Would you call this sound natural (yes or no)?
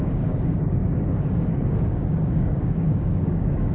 no